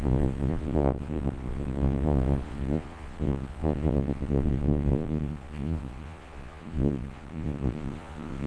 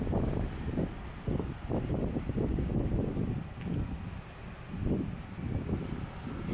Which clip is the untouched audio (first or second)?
second